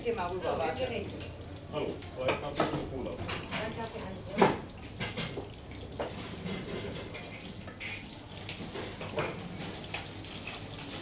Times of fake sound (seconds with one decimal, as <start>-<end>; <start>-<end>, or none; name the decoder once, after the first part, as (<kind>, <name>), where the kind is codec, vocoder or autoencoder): 2.8-5.1 (vocoder, BigVGAN v2)